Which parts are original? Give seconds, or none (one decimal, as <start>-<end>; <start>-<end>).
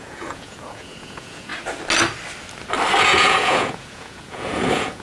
1.5-3.0